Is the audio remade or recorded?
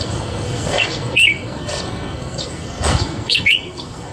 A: remade